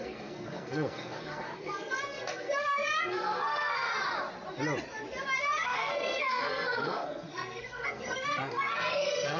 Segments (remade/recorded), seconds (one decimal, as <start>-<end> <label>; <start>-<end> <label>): 0.0-3.9 remade; 3.9-5.4 recorded; 5.4-9.4 remade